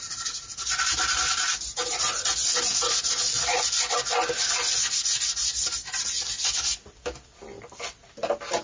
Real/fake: real